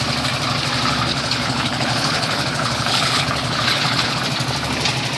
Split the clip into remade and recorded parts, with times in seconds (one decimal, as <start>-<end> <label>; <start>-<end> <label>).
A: 0.0-1.1 recorded; 1.1-4.2 remade; 4.2-5.2 recorded